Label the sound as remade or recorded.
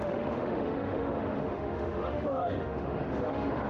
remade